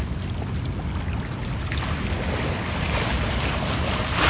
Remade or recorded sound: recorded